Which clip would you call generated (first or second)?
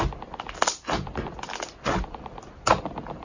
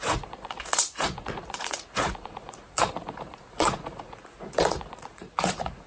second